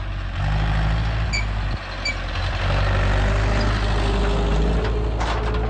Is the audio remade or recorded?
recorded